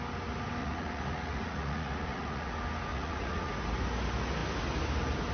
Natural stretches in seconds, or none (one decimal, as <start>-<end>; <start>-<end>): 0.0-0.6; 2.5-2.9; 3.5-5.3